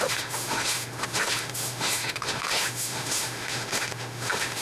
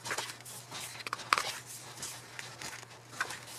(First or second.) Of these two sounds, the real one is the second